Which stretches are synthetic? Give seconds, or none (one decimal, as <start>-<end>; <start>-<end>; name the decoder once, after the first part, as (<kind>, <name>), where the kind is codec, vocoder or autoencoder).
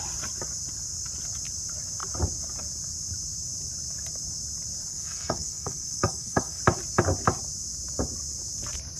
4.9-6.6 (codec, SNAC)